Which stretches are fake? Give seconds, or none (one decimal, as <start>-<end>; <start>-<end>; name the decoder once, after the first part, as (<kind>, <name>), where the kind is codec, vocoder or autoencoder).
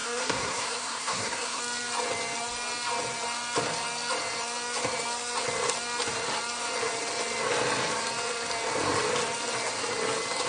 0.0-1.6 (codec, SNAC)